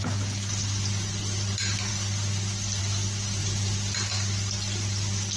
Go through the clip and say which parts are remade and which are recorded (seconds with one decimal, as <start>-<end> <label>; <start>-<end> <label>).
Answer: 0.0-5.4 recorded